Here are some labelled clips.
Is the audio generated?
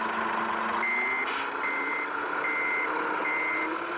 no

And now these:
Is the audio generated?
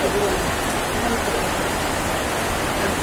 no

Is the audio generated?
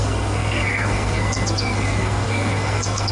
yes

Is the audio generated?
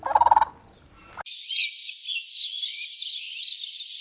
no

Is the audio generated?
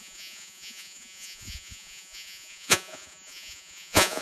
yes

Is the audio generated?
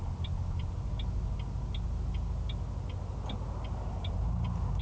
no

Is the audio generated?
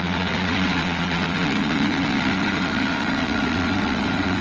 yes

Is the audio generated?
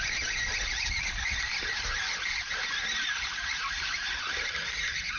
no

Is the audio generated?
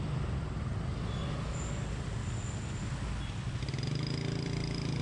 no